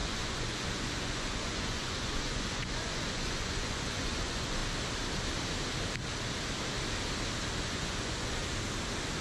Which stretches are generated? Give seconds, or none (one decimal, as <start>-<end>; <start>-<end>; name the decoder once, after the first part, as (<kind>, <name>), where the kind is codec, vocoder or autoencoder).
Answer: 0.0-4.6 (vocoder, Vocos); 7.6-8.4